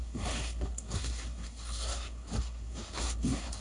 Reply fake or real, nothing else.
fake